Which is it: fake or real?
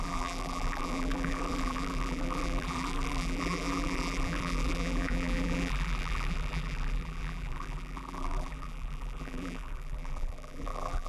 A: fake